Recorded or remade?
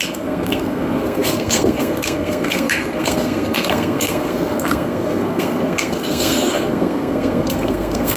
remade